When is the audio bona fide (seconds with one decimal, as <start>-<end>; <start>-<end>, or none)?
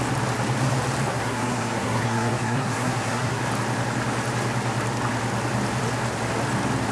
0.0-1.1; 3.4-6.9